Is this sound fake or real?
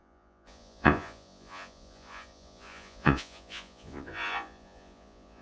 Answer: fake